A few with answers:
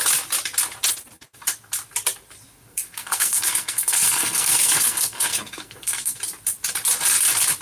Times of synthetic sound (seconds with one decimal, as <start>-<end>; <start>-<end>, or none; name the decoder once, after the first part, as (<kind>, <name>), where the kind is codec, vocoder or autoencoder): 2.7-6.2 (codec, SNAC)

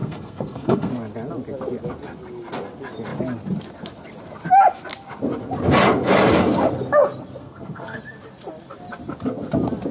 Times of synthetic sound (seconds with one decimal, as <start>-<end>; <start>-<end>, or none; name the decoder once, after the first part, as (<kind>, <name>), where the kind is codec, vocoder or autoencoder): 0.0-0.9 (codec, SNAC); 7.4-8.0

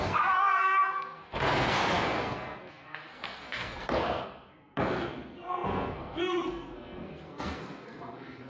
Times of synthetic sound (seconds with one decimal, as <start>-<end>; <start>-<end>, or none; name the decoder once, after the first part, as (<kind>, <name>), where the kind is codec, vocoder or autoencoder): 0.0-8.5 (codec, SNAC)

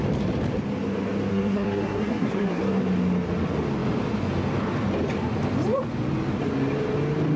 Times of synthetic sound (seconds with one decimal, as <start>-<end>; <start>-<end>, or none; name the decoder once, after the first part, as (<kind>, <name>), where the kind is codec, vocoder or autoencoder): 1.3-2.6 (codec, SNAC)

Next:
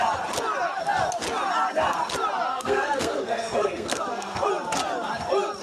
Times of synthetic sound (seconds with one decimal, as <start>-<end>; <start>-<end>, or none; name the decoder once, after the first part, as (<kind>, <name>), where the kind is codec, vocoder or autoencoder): 2.5-4.5 (codec, SNAC)

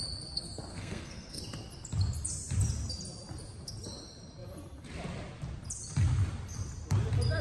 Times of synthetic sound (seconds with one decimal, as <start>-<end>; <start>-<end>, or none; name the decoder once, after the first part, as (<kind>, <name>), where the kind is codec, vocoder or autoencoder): 0.7-1.4 (codec, SNAC)

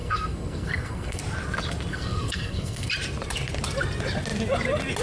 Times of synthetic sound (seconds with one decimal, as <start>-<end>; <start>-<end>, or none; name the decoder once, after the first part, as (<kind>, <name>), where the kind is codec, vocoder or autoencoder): 0.0-1.2 (codec, SNAC); 1.9-2.9

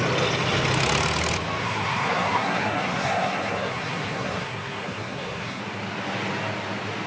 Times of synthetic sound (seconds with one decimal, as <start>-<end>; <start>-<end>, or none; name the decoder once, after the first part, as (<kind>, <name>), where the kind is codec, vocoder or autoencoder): 1.6-5.6 (codec, SNAC)